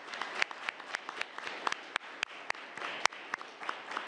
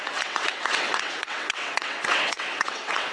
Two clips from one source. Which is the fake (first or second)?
second